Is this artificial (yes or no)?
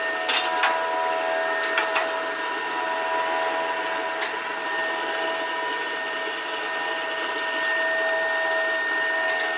no